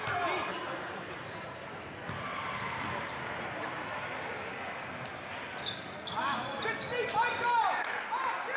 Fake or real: real